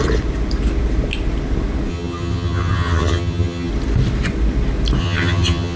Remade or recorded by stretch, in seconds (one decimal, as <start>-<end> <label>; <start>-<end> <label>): 0.0-1.9 recorded; 1.9-3.7 remade; 3.7-5.0 recorded; 5.0-5.8 remade